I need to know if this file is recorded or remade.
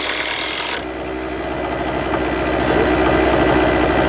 recorded